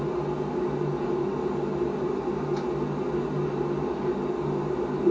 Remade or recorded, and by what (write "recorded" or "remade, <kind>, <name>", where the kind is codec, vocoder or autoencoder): recorded